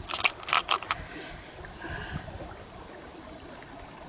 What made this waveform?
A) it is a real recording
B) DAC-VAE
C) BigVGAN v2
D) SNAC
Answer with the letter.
C